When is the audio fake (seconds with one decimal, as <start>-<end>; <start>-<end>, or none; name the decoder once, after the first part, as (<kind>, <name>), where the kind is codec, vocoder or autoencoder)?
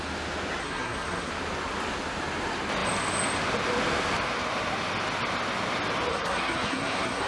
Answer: 0.6-1.3 (codec, SNAC); 6.1-7.3